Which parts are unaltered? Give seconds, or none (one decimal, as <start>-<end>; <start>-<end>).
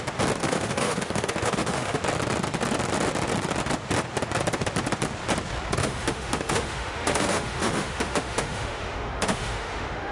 0.0-0.4; 2.0-5.8